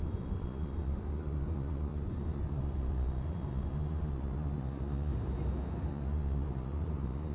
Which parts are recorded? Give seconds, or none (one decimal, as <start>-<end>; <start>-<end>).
5.1-5.9